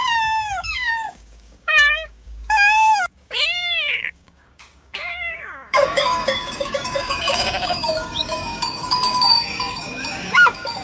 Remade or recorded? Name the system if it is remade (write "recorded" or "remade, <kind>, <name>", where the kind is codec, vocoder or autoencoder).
remade, codec, DAC